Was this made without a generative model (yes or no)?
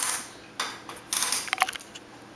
yes